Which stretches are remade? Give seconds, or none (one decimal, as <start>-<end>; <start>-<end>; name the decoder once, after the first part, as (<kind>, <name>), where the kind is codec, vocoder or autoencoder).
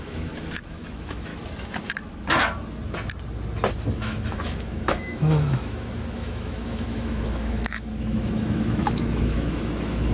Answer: 0.0-1.3 (autoencoder, DAC-VAE); 3.9-10.1